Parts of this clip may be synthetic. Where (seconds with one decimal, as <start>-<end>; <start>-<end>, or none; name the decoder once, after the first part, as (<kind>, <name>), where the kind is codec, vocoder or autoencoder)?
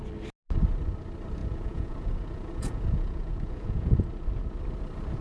1.4-4.1 (vocoder, Vocos)